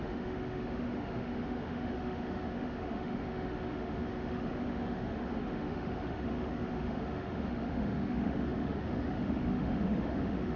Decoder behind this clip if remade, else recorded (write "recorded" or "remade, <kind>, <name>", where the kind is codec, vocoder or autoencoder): remade, autoencoder, DAC-VAE